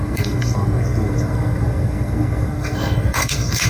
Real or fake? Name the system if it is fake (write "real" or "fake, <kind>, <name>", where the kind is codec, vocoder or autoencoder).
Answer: fake, codec, SNAC